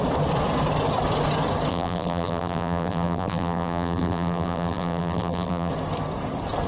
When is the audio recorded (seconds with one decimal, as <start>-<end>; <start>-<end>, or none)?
0.0-1.7; 5.7-6.7